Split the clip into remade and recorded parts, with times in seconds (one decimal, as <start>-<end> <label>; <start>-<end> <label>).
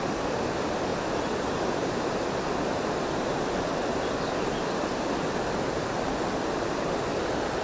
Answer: 0.0-0.9 recorded; 0.9-2.0 remade; 2.0-7.6 recorded